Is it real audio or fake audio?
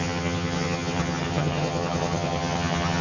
fake